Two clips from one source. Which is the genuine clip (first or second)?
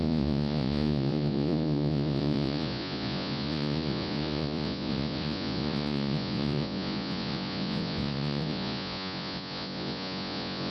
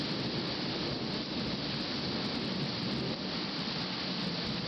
second